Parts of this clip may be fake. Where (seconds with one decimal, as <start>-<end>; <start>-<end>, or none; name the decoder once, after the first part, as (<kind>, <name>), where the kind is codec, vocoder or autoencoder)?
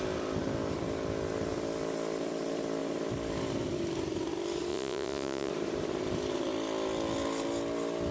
4.7-5.5 (vocoder, Vocos)